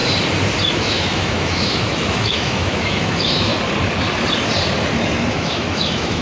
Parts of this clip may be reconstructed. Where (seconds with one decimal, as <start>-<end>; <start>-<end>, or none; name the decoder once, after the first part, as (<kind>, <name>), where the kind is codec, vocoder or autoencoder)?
0.8-3.5 (autoencoder, DAC-VAE); 5.3-6.2